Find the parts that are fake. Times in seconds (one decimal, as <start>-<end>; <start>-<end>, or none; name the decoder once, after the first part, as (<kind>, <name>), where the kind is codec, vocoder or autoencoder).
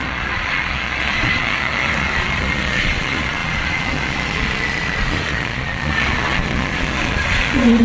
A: 0.0-7.8 (vocoder, Vocos)